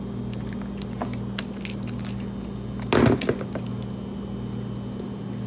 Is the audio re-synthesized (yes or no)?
no